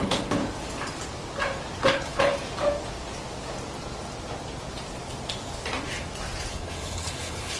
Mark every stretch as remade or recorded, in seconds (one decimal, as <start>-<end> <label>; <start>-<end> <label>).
0.0-0.4 remade; 0.4-1.9 recorded; 1.9-2.3 remade; 2.3-6.5 recorded; 6.5-7.6 remade